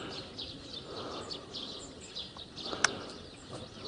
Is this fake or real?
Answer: real